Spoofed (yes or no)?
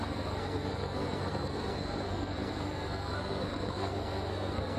yes